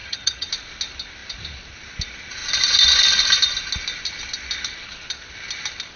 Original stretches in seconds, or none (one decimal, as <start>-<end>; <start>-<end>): 0.5-6.0